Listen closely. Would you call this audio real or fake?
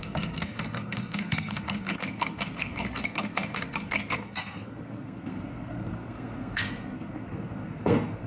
fake